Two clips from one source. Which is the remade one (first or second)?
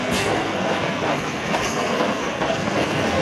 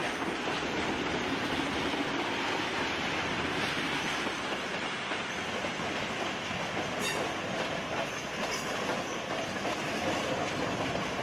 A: first